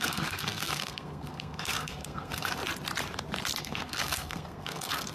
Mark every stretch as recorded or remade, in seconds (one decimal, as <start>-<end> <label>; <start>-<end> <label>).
0.0-2.6 remade; 2.6-3.6 recorded; 3.6-5.1 remade